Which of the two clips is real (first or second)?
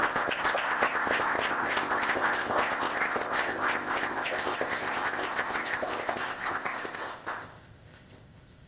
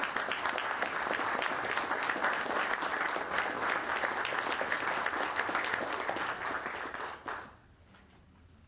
second